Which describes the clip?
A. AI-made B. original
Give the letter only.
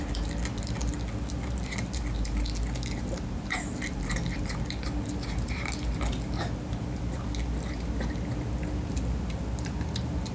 B